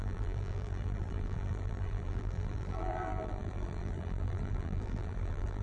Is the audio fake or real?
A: fake